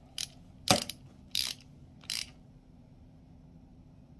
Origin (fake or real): real